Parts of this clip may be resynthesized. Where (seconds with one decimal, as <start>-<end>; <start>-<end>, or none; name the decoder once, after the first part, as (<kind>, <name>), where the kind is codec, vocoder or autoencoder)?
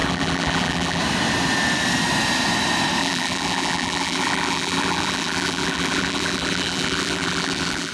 0.0-1.0 (vocoder, BigVGAN v2); 3.0-7.9